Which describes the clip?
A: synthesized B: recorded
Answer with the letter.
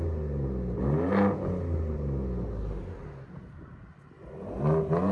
B